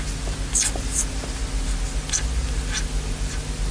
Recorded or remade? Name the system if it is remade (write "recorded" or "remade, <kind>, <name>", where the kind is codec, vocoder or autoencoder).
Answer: recorded